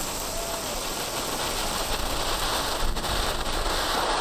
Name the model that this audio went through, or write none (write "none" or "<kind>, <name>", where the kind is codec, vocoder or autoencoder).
none